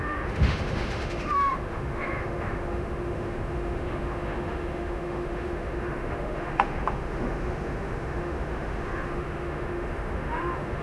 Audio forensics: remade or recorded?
remade